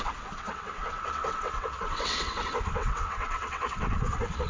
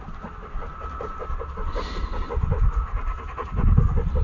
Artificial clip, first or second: first